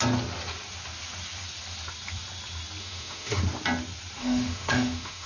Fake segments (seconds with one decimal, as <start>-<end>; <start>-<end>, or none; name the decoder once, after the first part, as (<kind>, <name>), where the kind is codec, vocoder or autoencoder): 2.8-3.4 (autoencoder, DAC-VAE); 4.2-5.3